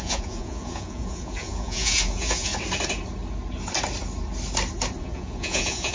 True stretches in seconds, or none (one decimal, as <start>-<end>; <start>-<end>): 2.5-5.0

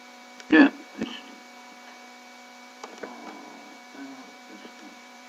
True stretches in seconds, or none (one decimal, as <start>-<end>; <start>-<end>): 0.9-2.7

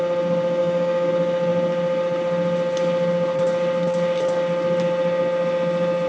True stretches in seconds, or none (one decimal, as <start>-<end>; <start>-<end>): 0.0-0.6; 1.1-6.1

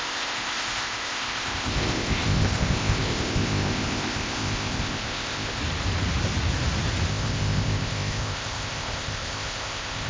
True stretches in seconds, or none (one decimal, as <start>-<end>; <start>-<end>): 5.6-7.1

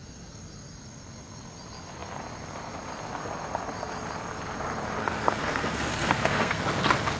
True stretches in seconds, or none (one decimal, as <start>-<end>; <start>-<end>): 0.0-5.0; 6.6-7.2

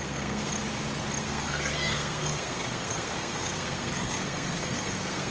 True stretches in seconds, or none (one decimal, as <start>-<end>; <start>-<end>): 0.5-1.2

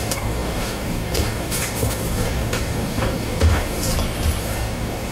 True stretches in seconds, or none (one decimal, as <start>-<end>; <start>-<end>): 3.9-4.4